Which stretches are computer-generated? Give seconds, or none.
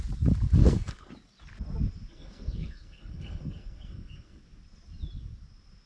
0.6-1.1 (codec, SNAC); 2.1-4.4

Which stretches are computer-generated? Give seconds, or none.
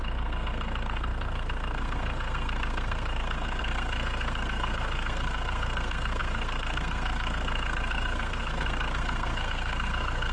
0.0-10.3 (codec, SNAC)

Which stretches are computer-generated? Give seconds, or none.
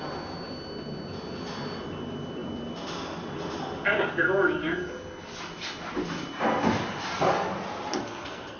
7.9-8.6 (codec, SNAC)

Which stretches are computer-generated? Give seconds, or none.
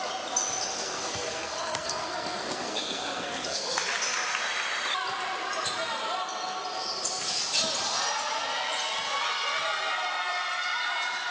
0.7-3.8 (codec, SNAC)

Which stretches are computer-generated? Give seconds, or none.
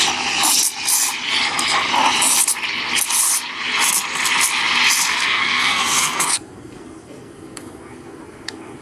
5.1-8.8 (codec, SNAC)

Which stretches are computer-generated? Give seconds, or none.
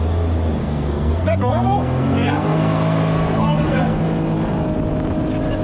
0.6-4.0 (codec, SNAC)